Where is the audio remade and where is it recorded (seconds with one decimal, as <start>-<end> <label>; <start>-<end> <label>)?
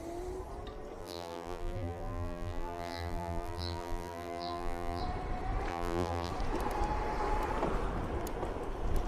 0.0-1.0 recorded; 1.0-5.0 remade; 5.0-5.7 recorded; 5.7-6.3 remade; 6.3-9.1 recorded